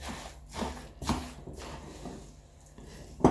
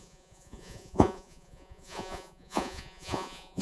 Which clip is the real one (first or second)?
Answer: first